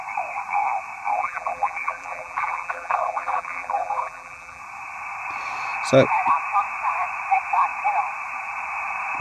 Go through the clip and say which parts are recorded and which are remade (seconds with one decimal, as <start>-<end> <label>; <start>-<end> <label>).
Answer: 0.0-1.1 recorded; 1.1-4.6 remade; 4.6-9.2 recorded